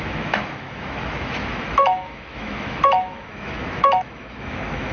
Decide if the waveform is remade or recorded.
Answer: remade